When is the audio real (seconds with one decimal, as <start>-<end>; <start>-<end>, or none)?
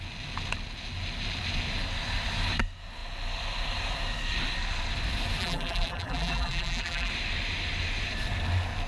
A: 0.0-5.4; 7.1-8.9